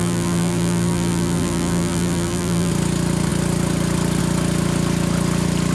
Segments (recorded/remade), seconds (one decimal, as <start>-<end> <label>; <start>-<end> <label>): 0.0-2.7 remade; 2.7-5.7 recorded